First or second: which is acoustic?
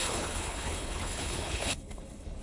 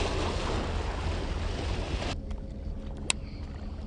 second